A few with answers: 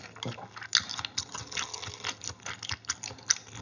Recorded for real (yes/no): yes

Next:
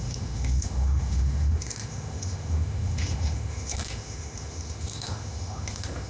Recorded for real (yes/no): no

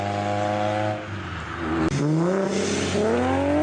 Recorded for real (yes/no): yes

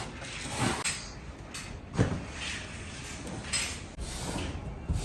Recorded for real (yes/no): yes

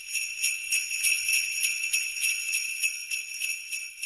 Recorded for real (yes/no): no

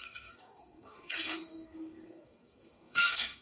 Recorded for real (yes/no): no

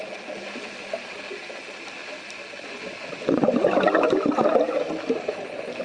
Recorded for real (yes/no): yes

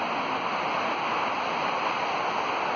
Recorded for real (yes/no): yes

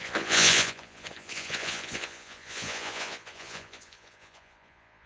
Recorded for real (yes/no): no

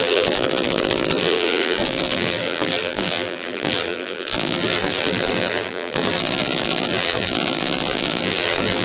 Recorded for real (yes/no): no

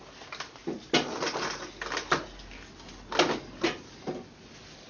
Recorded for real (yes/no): yes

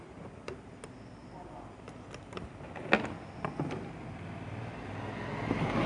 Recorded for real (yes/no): yes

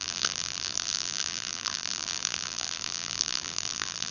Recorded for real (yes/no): no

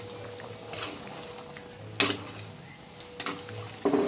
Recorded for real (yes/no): yes